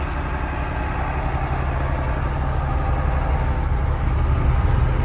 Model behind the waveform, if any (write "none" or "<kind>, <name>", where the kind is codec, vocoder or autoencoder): none